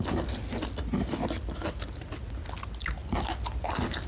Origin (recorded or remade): recorded